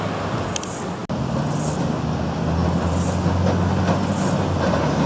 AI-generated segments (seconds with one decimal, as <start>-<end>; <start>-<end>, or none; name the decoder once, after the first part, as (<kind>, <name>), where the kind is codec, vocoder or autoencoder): none